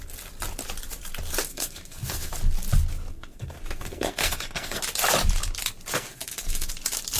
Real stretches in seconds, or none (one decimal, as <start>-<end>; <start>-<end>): 0.0-1.5; 2.3-3.1; 4.8-5.9; 6.7-7.2